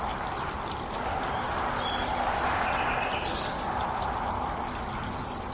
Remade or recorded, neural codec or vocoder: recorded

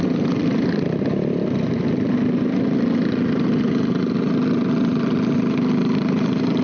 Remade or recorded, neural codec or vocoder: recorded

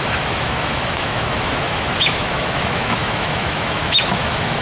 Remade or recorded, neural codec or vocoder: remade, autoencoder, DAC-VAE